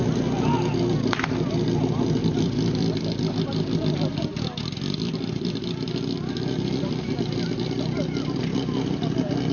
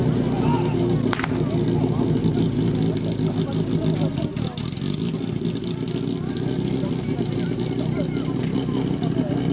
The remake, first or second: first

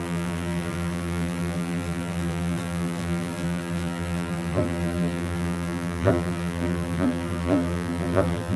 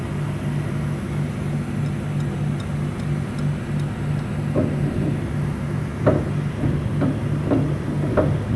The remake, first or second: first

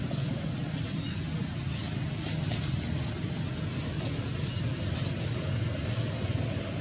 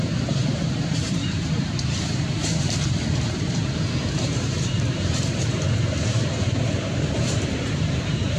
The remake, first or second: second